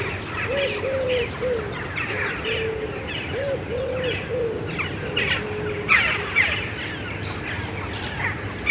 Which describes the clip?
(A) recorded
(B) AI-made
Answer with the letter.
A